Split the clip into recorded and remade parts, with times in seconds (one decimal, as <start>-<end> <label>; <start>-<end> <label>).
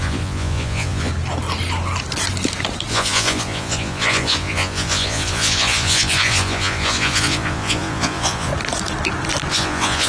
0.0-1.1 remade; 1.1-2.9 recorded; 2.9-8.5 remade; 8.5-9.5 recorded; 9.5-10.1 remade